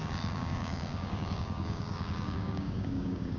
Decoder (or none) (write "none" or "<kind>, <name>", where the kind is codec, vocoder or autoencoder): codec, DAC